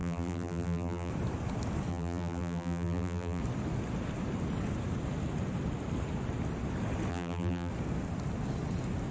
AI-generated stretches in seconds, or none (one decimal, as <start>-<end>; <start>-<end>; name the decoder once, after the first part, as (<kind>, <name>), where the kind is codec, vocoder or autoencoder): 0.0-1.1 (vocoder, BigVGAN v2); 1.9-3.4; 7.1-7.7